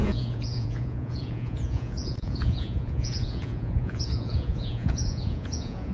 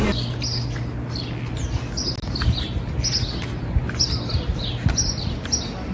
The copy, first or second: first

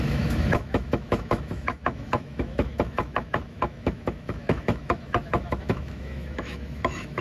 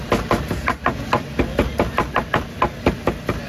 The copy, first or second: first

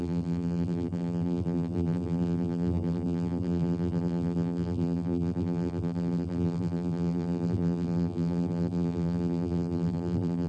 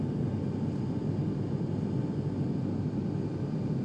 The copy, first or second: first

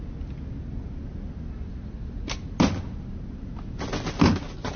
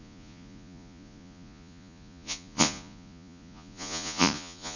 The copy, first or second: second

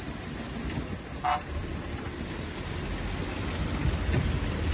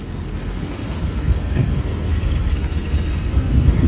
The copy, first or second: second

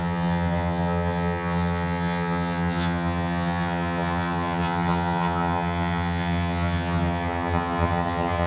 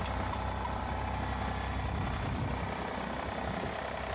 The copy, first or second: first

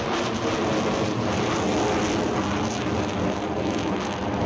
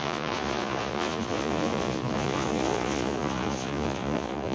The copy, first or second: second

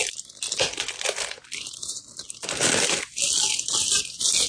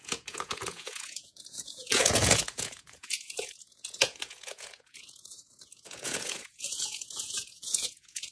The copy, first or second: second